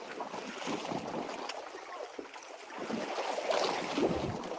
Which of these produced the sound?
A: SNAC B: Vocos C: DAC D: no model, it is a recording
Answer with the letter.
D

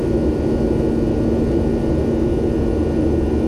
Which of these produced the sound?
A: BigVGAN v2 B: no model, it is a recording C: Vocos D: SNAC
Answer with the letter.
B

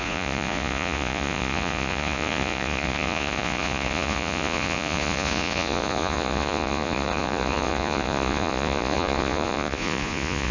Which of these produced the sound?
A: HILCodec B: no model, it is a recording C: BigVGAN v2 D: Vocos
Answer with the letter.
D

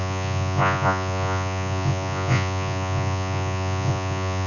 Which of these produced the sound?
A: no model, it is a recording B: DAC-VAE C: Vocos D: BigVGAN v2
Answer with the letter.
C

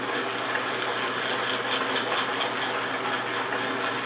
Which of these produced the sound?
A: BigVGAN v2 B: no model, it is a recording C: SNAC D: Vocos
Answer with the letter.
B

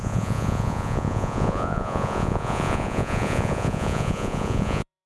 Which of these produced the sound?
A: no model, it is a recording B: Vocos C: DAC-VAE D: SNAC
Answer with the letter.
B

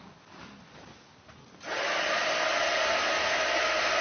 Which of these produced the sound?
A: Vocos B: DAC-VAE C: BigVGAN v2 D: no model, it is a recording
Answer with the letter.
D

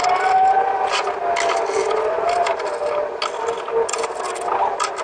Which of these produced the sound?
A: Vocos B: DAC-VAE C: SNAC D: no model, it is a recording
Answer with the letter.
D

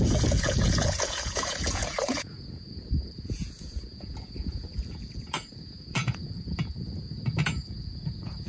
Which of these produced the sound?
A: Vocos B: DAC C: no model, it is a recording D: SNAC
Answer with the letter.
A